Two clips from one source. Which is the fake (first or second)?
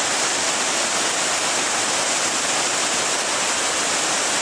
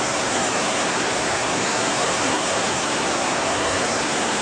second